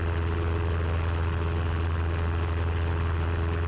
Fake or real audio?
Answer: real